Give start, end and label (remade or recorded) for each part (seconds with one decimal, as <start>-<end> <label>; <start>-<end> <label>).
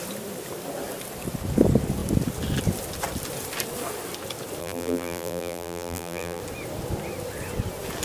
0.0-4.6 recorded; 4.6-6.4 remade; 6.4-8.0 recorded